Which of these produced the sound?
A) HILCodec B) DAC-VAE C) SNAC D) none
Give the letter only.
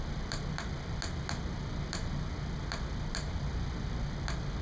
D